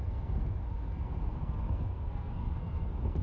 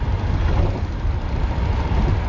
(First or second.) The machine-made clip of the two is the first